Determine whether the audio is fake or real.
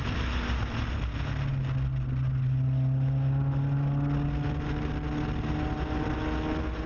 real